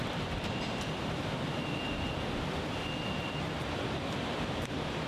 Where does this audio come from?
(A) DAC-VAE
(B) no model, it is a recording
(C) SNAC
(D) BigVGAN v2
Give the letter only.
D